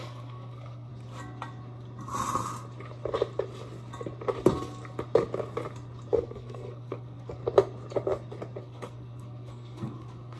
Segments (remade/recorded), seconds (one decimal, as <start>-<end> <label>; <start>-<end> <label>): 0.0-0.9 remade; 0.9-6.1 recorded; 6.1-7.4 remade; 7.4-8.6 recorded; 8.6-10.4 remade

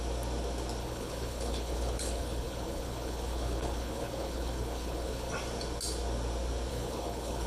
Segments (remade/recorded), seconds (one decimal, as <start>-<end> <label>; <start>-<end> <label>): 0.0-0.8 recorded; 0.8-5.3 remade; 5.3-6.7 recorded; 6.7-7.5 remade

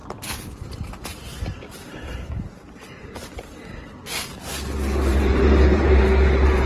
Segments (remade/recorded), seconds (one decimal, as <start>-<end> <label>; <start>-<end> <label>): 0.0-1.0 remade; 1.0-1.9 recorded; 1.9-3.4 remade; 3.4-5.1 recorded; 5.1-6.0 remade; 6.0-6.7 recorded

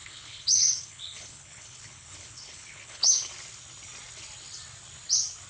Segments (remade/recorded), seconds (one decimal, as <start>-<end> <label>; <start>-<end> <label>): 0.0-3.3 remade; 3.3-5.5 recorded